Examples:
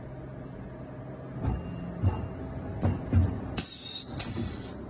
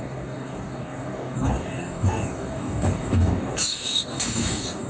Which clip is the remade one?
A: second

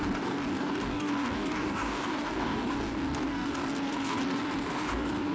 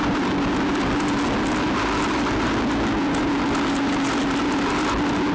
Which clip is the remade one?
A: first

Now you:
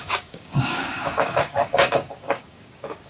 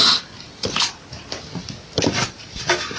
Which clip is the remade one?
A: first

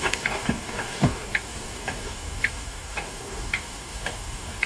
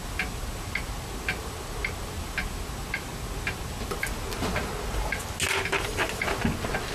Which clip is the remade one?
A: first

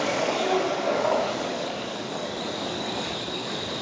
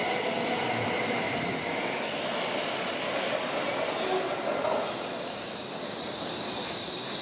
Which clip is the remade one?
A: first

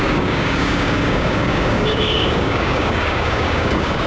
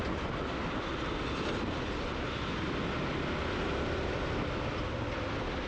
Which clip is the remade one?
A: first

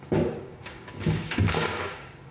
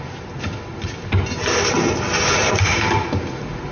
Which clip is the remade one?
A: first